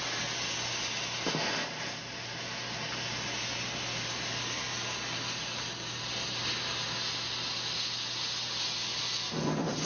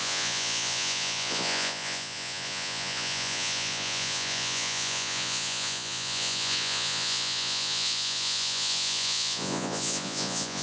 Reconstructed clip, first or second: second